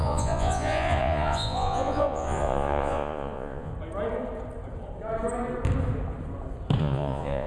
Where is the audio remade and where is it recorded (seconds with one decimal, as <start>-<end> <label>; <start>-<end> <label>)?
0.0-3.7 remade; 3.7-6.8 recorded; 6.8-7.5 remade